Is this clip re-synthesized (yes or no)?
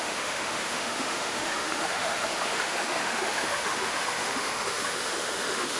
yes